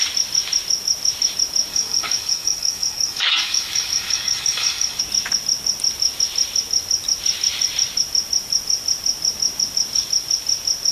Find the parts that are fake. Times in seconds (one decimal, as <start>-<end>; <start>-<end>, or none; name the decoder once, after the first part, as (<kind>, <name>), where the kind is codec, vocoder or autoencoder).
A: 1.7-5.0 (codec, DAC)